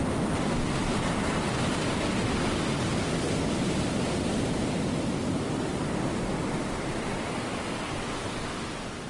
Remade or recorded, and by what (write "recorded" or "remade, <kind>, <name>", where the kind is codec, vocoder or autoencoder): recorded